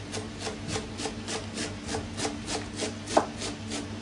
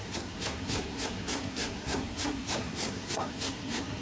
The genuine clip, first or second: first